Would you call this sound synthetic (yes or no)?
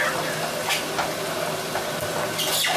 no